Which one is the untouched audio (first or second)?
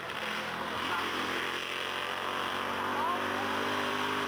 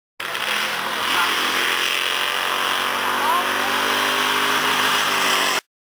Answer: second